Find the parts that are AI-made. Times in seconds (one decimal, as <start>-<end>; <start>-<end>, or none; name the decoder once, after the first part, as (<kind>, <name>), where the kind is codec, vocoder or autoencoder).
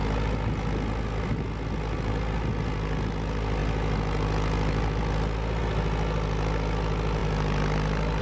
none